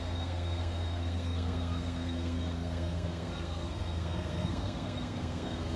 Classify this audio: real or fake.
fake